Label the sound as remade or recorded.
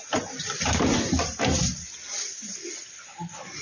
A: recorded